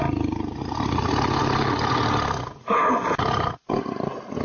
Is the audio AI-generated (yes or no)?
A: no